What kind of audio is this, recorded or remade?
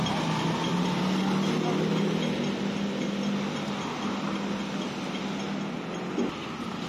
recorded